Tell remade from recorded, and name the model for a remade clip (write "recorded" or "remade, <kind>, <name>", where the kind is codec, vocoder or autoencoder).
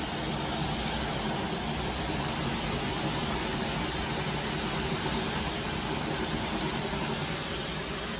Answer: recorded